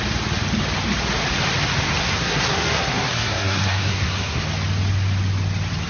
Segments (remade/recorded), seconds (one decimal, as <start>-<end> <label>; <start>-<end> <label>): 0.0-2.0 recorded; 2.0-4.4 remade; 4.4-5.9 recorded